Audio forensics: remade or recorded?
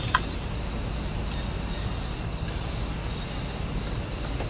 recorded